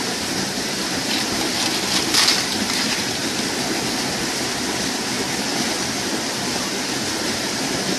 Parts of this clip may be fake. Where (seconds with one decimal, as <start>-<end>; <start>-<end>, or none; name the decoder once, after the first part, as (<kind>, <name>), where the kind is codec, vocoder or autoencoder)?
0.0-1.5 (vocoder, BigVGAN v2); 2.0-3.2; 6.5-8.0